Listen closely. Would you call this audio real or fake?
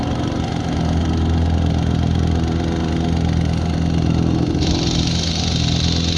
real